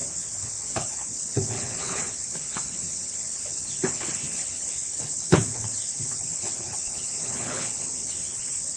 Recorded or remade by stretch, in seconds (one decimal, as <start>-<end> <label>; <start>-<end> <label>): 0.0-8.8 remade